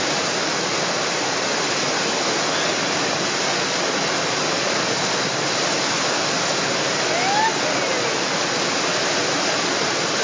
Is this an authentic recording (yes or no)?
yes